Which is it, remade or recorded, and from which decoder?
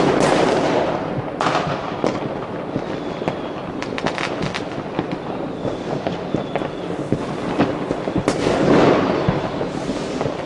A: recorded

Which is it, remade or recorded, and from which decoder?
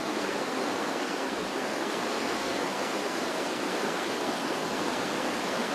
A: remade, codec, SNAC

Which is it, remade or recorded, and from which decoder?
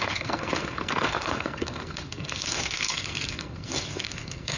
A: remade, codec, SNAC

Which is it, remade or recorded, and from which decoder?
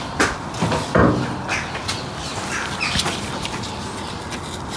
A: recorded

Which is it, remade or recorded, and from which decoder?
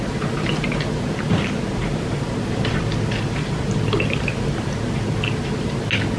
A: recorded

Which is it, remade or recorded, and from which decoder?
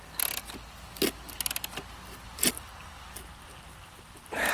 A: recorded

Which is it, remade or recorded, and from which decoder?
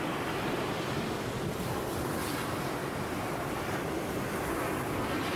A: recorded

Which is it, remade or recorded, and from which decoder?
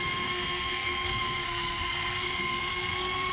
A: remade, codec, SNAC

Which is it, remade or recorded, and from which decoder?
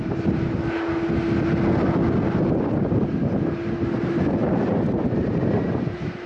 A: recorded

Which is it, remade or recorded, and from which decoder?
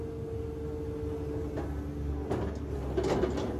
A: recorded